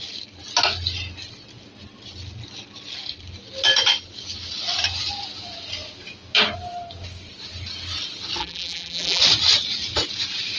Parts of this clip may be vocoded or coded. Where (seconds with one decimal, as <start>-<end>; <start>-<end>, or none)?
8.4-9.2